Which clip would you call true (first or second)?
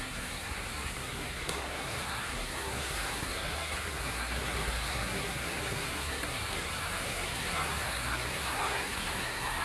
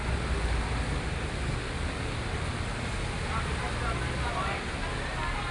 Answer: second